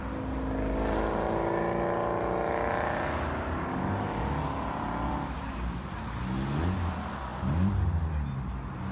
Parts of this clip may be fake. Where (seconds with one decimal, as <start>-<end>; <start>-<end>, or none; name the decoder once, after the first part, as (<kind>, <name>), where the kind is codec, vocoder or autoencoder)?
none